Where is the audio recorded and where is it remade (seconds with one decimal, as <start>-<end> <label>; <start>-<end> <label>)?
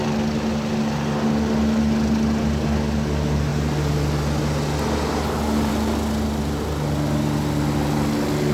0.0-8.5 recorded